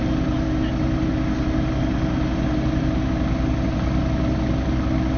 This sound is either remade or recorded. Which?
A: recorded